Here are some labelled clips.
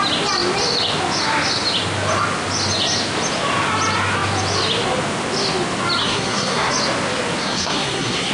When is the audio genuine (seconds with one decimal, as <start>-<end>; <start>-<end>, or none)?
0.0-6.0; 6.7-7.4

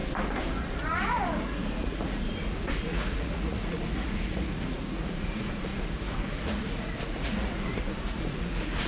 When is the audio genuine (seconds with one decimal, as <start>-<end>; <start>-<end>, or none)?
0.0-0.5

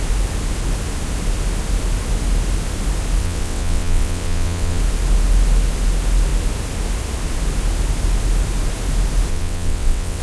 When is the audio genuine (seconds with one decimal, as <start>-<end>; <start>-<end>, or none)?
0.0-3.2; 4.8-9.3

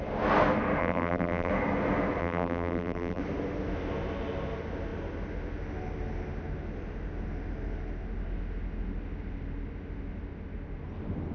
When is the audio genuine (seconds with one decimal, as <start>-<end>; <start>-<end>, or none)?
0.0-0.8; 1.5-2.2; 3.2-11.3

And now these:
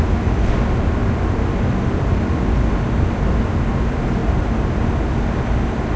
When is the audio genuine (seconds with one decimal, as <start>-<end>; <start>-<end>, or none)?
0.0-4.2; 4.7-6.0

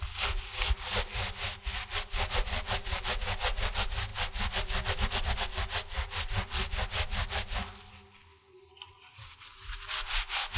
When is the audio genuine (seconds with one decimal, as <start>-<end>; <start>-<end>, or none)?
0.0-10.6

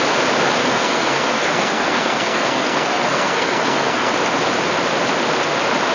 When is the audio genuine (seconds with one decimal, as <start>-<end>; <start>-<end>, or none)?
0.0-0.6; 4.1-5.9

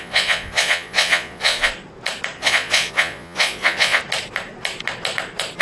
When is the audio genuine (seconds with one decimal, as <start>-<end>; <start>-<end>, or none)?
1.7-2.4; 4.0-5.6